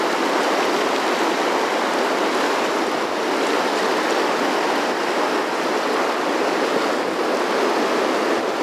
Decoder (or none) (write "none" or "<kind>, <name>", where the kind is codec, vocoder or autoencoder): none